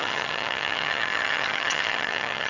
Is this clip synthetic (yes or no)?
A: yes